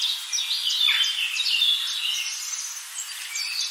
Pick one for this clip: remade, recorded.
recorded